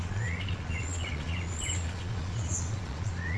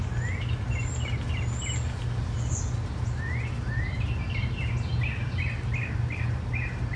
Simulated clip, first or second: first